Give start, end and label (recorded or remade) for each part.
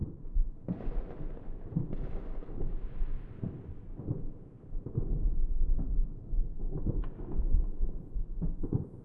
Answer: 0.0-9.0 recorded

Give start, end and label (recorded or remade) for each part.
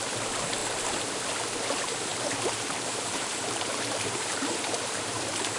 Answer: 0.0-2.1 recorded; 2.1-5.6 remade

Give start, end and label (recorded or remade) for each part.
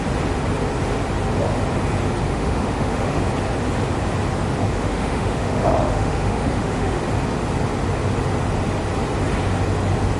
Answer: 0.0-2.3 recorded; 2.3-3.2 remade; 3.2-4.6 recorded; 4.6-7.0 remade; 7.0-10.2 recorded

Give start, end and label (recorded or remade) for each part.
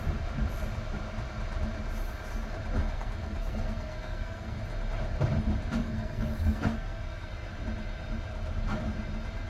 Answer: 0.0-2.8 recorded; 2.8-4.6 remade; 4.6-5.8 recorded; 5.8-7.3 remade; 7.3-9.5 recorded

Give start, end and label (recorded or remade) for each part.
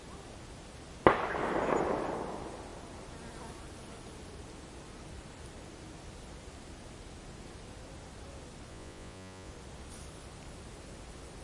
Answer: 0.0-8.7 recorded; 8.7-9.5 remade; 9.5-11.4 recorded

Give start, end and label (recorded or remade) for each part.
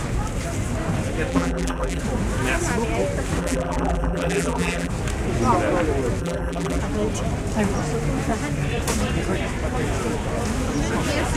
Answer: 0.0-1.3 recorded; 1.3-2.0 remade; 2.0-3.4 recorded; 3.4-4.9 remade; 4.9-6.2 recorded; 6.2-6.8 remade; 6.8-11.4 recorded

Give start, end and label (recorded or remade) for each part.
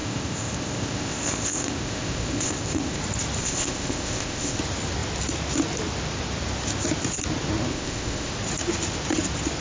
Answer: 0.0-3.0 remade; 3.0-3.4 recorded; 3.4-4.6 remade; 4.6-7.7 recorded; 7.7-8.3 remade; 8.3-9.6 recorded